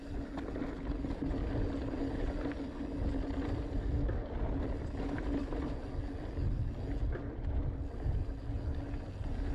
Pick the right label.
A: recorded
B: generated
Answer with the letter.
A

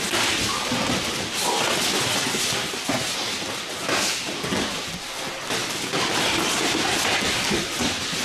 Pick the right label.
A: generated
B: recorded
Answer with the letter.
B